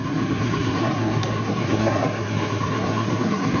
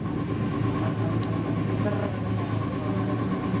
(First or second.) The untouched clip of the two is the second